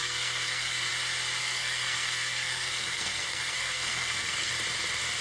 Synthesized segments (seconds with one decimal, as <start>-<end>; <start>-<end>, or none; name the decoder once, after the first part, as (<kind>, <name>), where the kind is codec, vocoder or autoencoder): 0.0-0.9 (codec, SNAC); 1.4-4.5